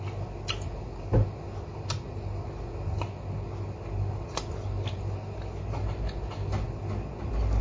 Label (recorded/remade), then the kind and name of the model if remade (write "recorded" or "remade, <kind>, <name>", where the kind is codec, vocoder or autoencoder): recorded